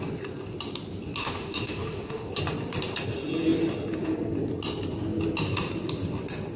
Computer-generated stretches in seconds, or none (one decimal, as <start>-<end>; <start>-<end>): 1.2-2.3